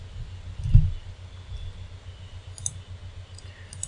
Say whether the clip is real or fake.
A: real